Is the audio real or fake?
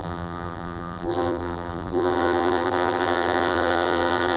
fake